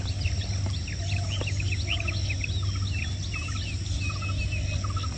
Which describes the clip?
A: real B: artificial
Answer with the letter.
A